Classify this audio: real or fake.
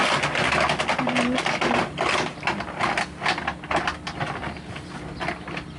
real